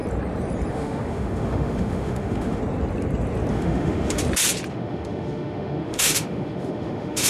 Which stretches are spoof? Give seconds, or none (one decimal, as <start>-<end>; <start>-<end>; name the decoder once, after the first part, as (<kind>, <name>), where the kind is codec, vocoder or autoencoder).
0.7-2.6 (autoencoder, DAC-VAE); 3.5-4.2; 4.7-7.3